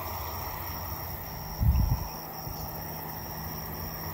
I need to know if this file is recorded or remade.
recorded